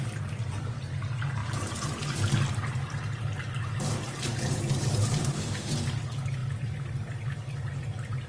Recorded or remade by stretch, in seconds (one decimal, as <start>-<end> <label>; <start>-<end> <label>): 0.0-5.2 recorded; 5.2-5.7 remade; 5.7-8.3 recorded